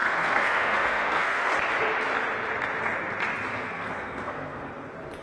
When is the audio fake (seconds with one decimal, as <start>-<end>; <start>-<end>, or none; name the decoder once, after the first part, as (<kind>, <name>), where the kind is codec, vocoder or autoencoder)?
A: 0.0-1.5 (codec, SNAC); 3.5-4.7